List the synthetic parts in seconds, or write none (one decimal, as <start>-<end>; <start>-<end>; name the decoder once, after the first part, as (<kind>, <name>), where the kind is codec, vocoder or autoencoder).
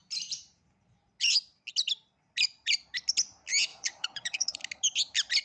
3.7-4.6 (vocoder, Vocos)